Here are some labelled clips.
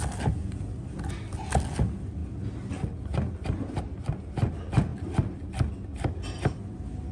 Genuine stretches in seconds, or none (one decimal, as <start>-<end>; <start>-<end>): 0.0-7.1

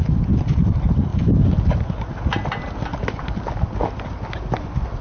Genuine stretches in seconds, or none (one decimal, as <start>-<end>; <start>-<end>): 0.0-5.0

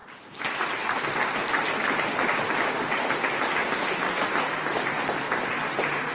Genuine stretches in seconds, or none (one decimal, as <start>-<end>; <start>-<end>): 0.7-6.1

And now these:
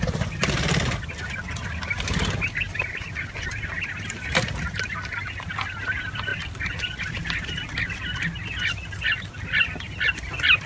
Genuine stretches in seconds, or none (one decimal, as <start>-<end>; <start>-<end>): 0.0-10.7